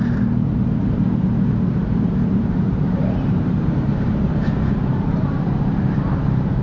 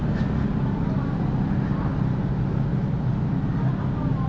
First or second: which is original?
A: second